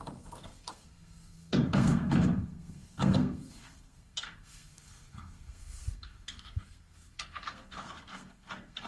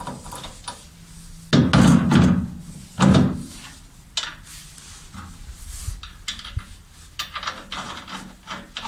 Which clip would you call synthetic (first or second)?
first